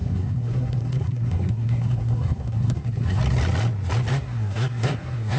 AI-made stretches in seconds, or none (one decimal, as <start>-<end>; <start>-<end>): 0.0-3.2; 4.1-5.4